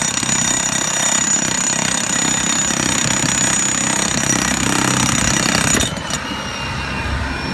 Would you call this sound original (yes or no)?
yes